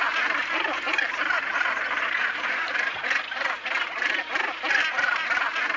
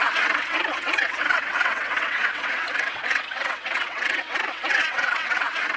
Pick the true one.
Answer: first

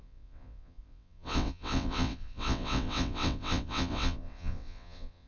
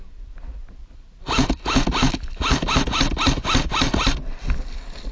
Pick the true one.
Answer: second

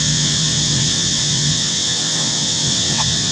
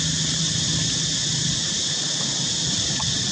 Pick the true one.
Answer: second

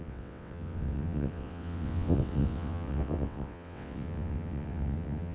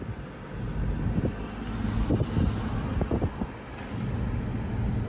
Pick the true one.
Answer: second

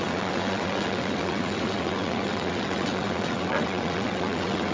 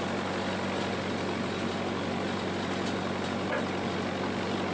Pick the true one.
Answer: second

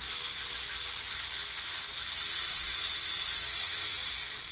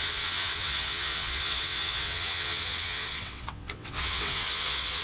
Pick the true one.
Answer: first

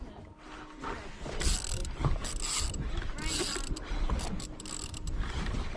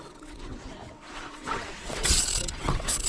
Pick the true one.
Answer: first